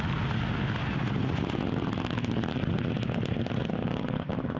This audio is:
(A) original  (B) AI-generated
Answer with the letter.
A